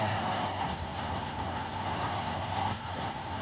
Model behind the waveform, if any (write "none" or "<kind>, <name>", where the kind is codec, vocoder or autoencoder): codec, SNAC